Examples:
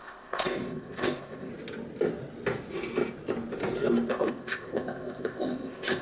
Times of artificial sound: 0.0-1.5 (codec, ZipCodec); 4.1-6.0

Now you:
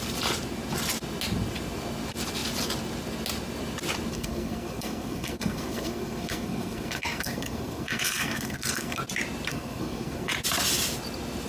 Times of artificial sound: 4.1-9.0 (codec, SNAC); 9.5-10.3

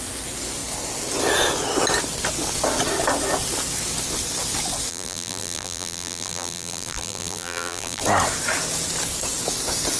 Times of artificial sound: 4.9-8.0 (vocoder, BigVGAN v2)